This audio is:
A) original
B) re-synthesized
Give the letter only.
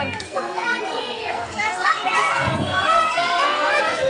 B